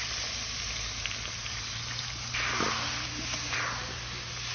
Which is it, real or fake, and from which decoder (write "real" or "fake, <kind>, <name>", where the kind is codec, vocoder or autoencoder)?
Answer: real